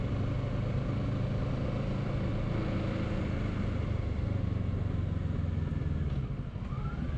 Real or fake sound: real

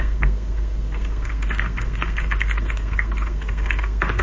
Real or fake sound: fake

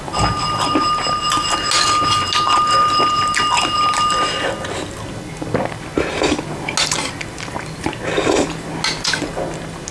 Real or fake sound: real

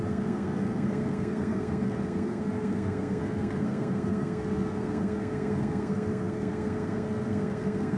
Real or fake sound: fake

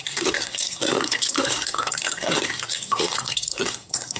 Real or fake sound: fake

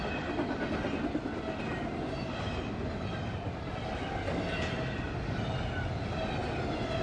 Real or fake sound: real